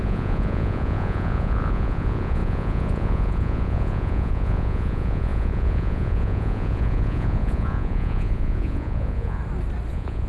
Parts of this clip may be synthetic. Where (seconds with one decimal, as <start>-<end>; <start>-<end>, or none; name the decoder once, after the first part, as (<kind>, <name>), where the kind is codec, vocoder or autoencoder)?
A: 0.0-9.4 (vocoder, Vocos); 9.9-10.3